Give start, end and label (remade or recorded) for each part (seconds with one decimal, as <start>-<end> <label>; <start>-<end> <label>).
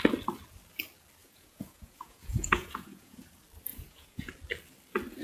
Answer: 0.0-1.2 recorded; 1.2-3.2 remade; 3.2-3.7 recorded; 3.7-4.3 remade; 4.3-5.2 recorded